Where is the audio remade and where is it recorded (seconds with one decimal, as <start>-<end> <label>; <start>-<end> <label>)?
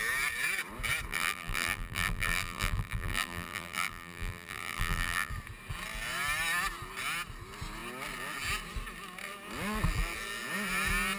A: 0.0-1.1 recorded; 1.1-5.3 remade; 5.3-11.2 recorded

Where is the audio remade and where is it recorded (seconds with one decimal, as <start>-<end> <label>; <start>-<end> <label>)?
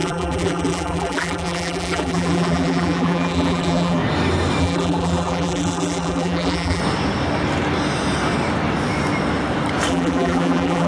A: 0.0-4.0 remade; 4.0-4.6 recorded; 4.6-6.8 remade; 6.8-9.9 recorded; 9.9-10.9 remade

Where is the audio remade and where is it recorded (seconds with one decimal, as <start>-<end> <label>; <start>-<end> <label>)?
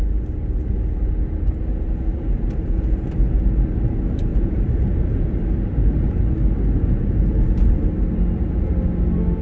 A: 0.0-2.1 recorded; 2.1-2.7 remade; 2.7-4.3 recorded; 4.3-6.2 remade; 6.2-9.4 recorded